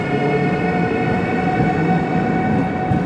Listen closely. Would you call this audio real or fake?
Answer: real